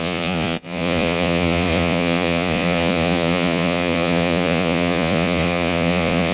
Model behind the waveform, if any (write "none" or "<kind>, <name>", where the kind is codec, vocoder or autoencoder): vocoder, Vocos